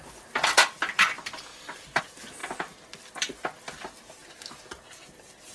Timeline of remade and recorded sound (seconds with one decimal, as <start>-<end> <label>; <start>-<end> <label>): 0.0-1.5 remade; 1.5-2.0 recorded; 2.0-2.4 remade; 2.4-3.0 recorded; 3.0-5.5 remade

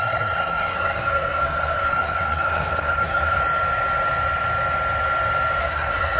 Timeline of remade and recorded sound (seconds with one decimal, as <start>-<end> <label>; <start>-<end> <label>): 0.0-3.4 remade; 3.4-5.6 recorded; 5.6-6.2 remade

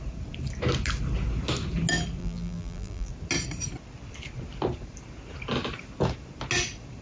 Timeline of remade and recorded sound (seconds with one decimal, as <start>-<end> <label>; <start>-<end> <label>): 0.0-2.2 recorded; 2.2-3.1 remade; 3.1-7.0 recorded

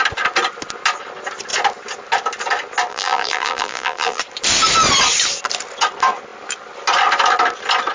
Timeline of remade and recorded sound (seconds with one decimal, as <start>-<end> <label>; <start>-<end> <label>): 0.0-2.9 recorded; 2.9-4.2 remade; 4.2-7.9 recorded